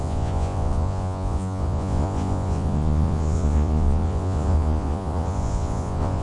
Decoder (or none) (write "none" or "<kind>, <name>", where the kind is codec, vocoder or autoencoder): vocoder, Vocos